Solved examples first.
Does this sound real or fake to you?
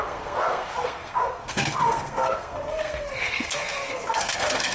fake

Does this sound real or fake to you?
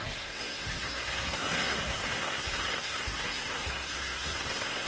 fake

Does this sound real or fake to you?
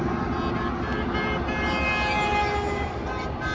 real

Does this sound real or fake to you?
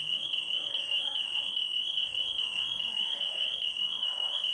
fake